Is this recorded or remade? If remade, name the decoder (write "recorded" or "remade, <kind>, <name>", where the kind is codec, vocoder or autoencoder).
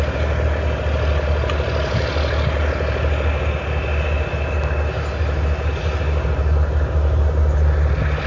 recorded